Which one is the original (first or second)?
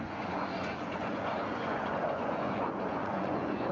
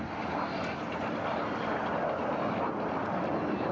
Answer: second